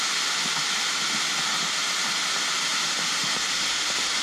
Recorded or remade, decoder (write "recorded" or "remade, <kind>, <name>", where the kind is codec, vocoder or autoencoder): recorded